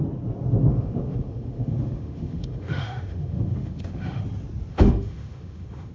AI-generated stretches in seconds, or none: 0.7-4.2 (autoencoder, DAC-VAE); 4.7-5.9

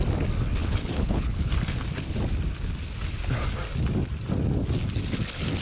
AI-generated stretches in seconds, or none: 0.6-1.5 (codec, HILCodec)

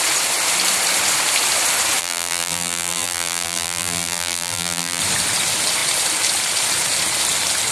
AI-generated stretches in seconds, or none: 2.0-5.0 (vocoder, BigVGAN v2)